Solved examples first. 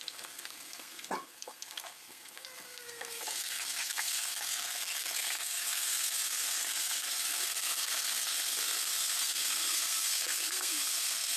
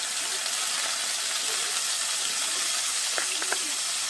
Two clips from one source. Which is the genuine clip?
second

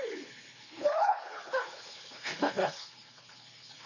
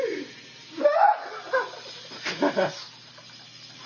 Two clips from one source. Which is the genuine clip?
second